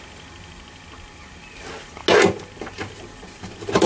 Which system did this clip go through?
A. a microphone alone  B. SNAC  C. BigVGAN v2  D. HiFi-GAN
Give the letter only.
A